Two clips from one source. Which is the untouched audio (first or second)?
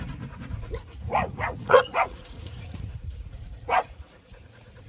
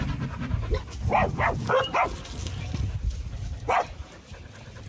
second